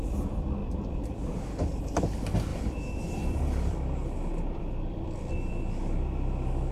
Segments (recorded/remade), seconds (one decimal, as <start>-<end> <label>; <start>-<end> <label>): 0.0-2.5 recorded; 2.5-5.5 remade; 5.5-6.7 recorded